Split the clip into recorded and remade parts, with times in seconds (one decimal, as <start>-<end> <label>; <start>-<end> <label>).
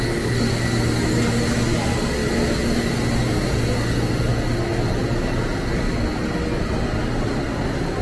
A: 0.0-8.0 recorded